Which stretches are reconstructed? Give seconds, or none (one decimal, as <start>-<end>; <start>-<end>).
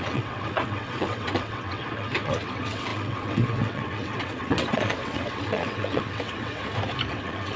0.0-6.6; 7.1-7.6